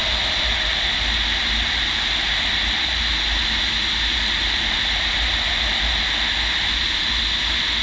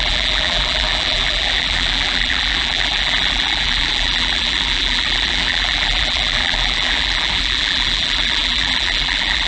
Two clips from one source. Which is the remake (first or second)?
second